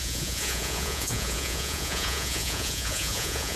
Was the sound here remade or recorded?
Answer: remade